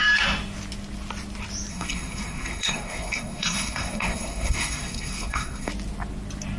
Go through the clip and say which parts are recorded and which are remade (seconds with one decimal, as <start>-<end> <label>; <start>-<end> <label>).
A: 0.0-1.7 recorded; 1.7-5.7 remade; 5.7-6.6 recorded